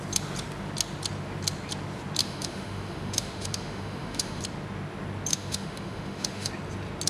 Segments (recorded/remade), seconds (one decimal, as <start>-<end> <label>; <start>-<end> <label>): 0.0-2.2 recorded; 2.2-4.4 remade; 4.4-5.3 recorded; 5.3-6.5 remade; 6.5-7.1 recorded